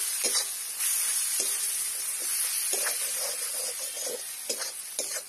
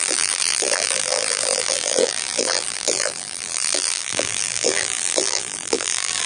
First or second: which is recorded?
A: first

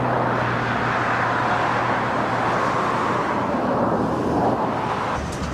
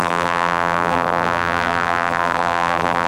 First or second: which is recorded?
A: first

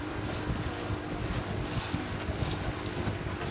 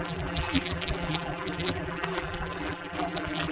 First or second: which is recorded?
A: first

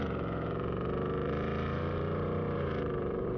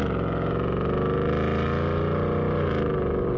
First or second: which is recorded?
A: second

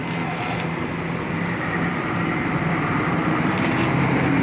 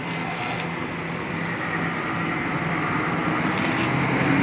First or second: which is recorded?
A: second